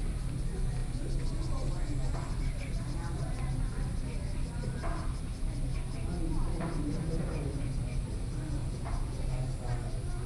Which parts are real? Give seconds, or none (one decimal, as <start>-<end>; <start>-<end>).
0.0-8.6; 9.2-10.3